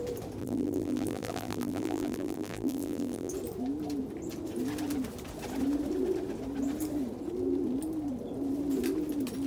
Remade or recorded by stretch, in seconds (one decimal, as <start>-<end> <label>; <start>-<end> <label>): 0.0-0.4 recorded; 0.4-3.3 remade; 3.3-9.5 recorded